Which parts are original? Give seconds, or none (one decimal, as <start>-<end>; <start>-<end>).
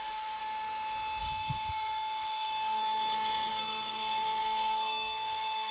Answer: 0.4-1.2; 2.8-3.5